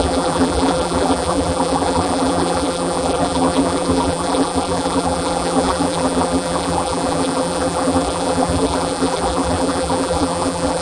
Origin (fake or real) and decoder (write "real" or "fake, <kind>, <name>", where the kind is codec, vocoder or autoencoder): fake, vocoder, BigVGAN v2